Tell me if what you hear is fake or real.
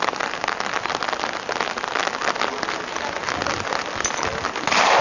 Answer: real